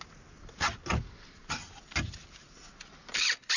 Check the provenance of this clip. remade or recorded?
recorded